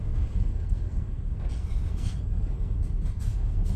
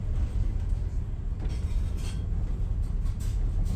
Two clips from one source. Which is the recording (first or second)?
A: second